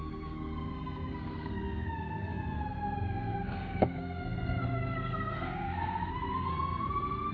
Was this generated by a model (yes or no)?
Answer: yes